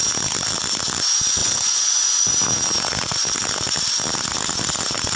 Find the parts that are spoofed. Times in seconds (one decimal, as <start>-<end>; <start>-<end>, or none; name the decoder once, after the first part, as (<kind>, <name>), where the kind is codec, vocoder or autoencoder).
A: 1.4-2.3 (vocoder, Vocos)